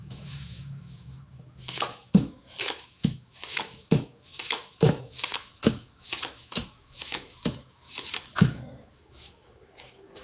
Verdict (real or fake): fake